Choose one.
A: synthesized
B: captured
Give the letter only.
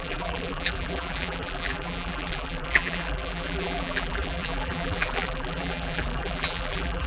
A